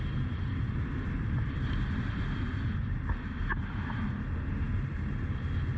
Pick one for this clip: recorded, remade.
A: recorded